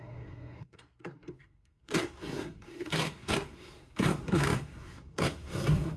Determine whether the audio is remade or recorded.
remade